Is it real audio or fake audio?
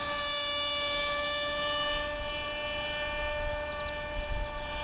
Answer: real